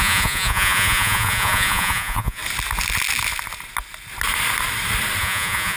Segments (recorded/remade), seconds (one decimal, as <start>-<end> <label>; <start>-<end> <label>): 0.0-2.4 remade; 2.4-5.2 recorded; 5.2-5.8 remade